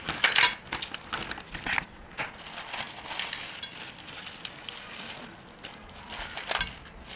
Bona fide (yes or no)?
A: yes